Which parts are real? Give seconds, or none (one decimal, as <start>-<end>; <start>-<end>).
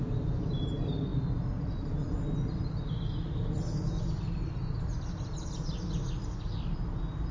0.0-7.3